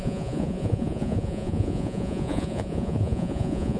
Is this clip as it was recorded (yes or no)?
no